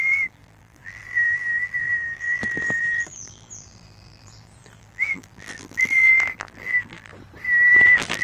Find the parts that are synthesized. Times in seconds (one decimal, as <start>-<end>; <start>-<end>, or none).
0.0-7.1; 7.7-8.2